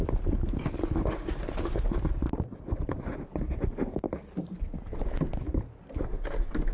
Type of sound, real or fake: real